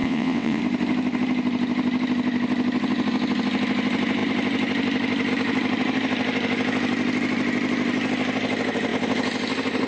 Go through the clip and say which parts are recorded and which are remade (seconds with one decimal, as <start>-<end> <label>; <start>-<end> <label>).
0.0-0.6 remade; 0.6-9.9 recorded

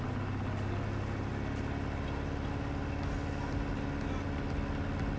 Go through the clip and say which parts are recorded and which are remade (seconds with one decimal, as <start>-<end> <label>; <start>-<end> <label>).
0.0-5.2 recorded

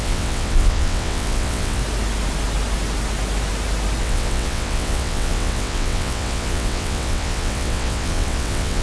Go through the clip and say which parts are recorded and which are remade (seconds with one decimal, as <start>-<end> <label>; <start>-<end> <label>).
0.0-1.8 remade; 1.8-4.0 recorded; 4.0-8.8 remade

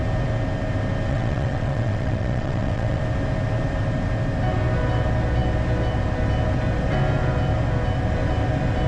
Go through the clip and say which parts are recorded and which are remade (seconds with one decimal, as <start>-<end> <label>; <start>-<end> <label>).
0.0-1.1 recorded; 1.1-3.0 remade; 3.0-8.9 recorded

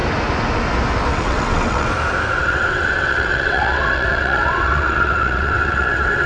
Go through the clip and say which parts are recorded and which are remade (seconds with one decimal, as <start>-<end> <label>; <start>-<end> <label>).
0.0-1.1 recorded; 1.1-1.9 remade; 1.9-2.4 recorded; 2.4-6.3 remade

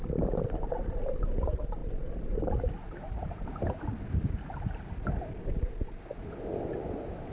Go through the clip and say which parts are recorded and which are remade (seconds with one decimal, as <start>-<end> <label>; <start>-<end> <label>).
0.0-7.3 recorded